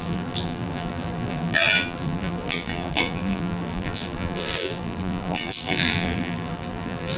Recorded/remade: remade